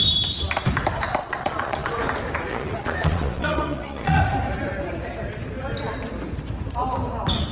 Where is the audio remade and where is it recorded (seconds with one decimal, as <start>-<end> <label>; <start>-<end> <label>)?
0.0-1.2 recorded; 1.2-2.0 remade; 2.0-2.5 recorded; 2.5-4.2 remade; 4.2-7.5 recorded